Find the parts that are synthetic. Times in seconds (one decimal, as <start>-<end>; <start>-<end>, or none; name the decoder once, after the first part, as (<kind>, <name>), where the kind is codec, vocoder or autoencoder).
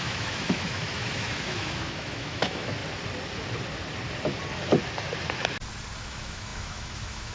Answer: 0.0-2.8 (autoencoder, DAC-VAE); 6.0-7.3